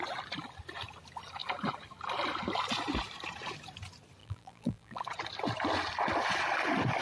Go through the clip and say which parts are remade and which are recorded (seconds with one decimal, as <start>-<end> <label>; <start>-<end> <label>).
0.0-4.2 recorded; 4.2-5.0 remade; 5.0-7.0 recorded